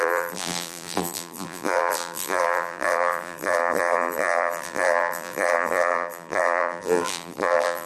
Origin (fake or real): fake